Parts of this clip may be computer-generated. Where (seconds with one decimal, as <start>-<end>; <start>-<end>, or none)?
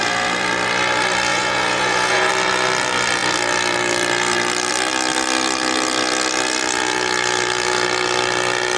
1.3-2.3